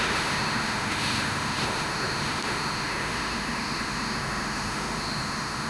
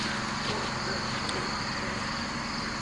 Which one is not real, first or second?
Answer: first